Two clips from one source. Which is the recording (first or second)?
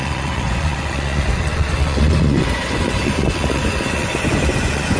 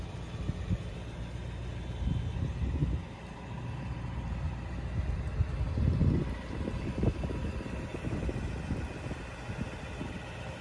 second